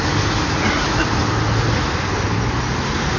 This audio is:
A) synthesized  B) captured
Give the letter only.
B